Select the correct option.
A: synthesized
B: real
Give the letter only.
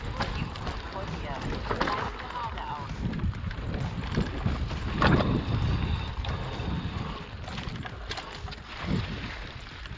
B